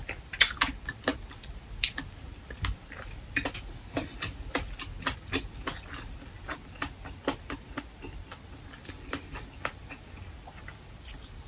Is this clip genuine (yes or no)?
yes